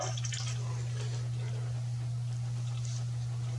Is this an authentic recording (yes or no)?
yes